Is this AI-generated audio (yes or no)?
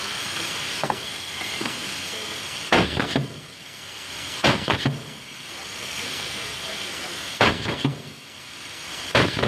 yes